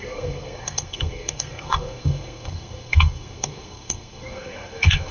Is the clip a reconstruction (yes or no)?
yes